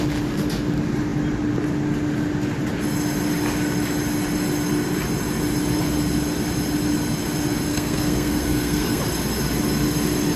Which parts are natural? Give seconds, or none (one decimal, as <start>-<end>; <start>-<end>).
0.0-7.7; 9.0-10.4